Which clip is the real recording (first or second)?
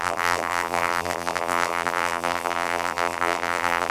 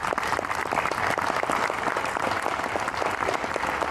second